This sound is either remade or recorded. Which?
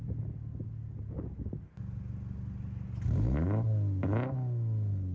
recorded